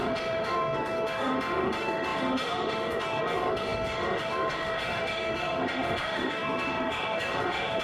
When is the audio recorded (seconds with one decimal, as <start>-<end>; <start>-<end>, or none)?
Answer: none